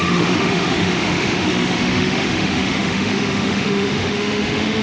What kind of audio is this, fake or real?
fake